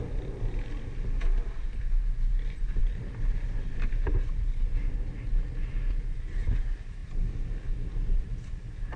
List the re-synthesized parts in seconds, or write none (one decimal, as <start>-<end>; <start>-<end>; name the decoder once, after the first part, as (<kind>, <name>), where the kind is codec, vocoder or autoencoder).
none